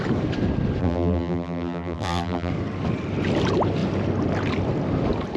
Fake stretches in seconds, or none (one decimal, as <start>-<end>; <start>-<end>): 0.8-2.5